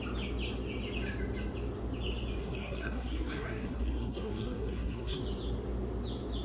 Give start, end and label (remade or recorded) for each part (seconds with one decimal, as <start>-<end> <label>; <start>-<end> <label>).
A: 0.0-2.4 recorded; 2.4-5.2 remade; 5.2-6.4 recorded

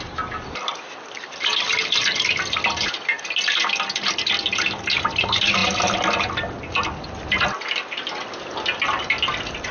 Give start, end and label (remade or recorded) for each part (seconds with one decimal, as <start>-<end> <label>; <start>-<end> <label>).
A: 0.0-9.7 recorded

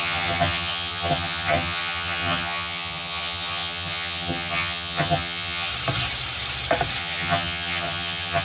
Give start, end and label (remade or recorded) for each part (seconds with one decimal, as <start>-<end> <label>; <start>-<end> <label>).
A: 0.0-5.7 remade; 5.7-7.0 recorded; 7.0-8.4 remade

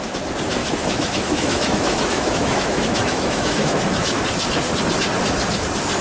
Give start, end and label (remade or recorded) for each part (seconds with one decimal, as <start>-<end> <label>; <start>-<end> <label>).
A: 0.0-0.6 recorded; 0.6-4.2 remade; 4.2-6.0 recorded

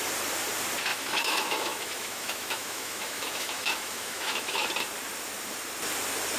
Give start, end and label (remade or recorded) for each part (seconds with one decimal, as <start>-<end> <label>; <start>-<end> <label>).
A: 0.0-0.9 recorded; 0.9-4.7 remade; 4.7-6.4 recorded